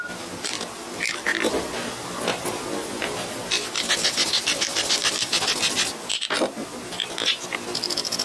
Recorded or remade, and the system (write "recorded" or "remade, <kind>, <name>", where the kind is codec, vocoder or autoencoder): recorded